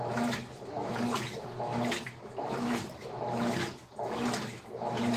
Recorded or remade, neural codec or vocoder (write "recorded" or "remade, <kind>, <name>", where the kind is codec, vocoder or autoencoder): remade, autoencoder, DAC-VAE